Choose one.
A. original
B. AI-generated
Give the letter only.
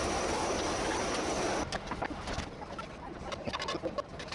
A